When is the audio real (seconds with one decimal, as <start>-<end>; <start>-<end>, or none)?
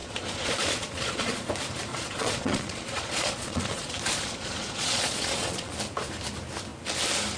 1.5-1.9; 5.7-7.4